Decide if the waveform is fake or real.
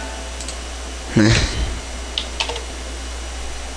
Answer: real